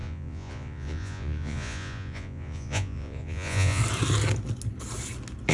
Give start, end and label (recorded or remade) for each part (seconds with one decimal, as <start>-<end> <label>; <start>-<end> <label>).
0.0-3.8 remade; 3.8-5.5 recorded